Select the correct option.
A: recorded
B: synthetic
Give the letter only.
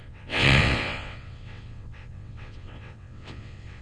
B